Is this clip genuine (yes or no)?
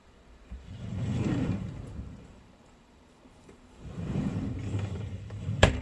no